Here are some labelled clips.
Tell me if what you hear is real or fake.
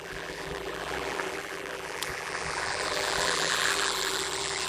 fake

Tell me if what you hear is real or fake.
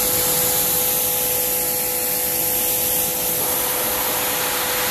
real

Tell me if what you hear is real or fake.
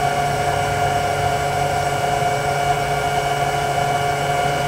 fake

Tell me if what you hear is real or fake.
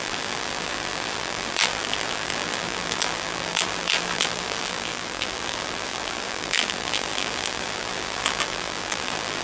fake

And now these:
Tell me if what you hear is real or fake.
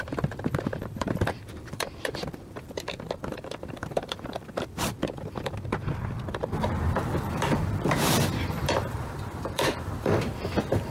fake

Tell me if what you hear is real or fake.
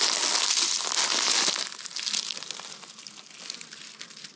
real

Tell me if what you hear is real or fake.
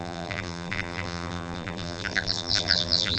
fake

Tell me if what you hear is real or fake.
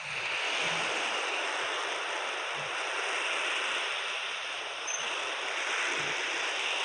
fake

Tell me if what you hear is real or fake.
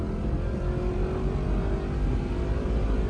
real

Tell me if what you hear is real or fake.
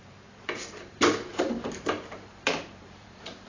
fake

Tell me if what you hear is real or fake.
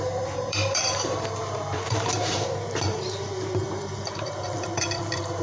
fake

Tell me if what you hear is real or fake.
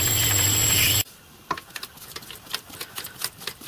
real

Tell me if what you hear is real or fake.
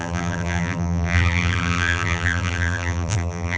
fake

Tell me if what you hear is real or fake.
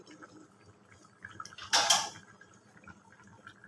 real